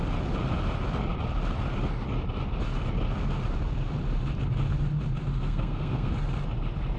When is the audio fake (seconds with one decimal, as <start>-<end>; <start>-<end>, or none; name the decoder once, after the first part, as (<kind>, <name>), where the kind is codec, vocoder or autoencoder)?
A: 5.3-6.1 (codec, SNAC)